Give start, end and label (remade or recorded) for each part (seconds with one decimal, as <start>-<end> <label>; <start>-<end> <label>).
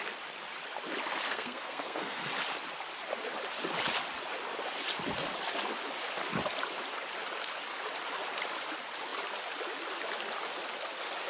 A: 0.0-1.3 recorded; 1.3-2.3 remade; 2.3-11.3 recorded